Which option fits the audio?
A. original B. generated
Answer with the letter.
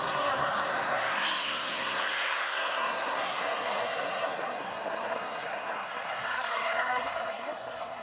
B